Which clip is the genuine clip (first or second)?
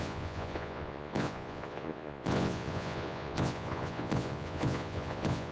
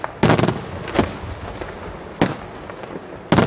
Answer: second